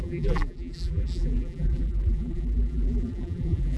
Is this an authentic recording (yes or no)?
no